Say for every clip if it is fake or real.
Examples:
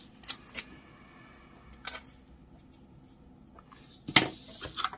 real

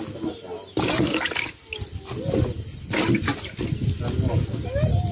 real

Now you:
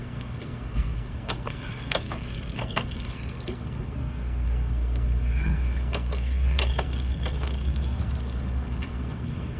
fake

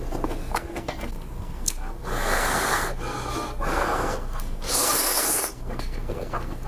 fake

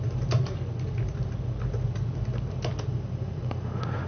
real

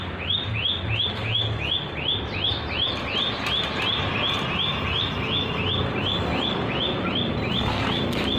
real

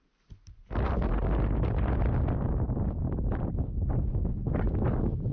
real